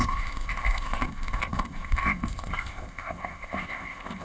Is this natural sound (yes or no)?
no